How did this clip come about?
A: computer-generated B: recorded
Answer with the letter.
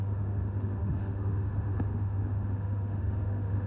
A